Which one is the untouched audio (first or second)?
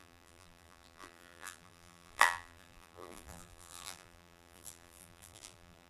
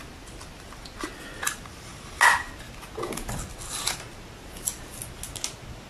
second